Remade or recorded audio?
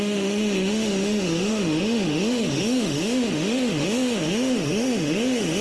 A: remade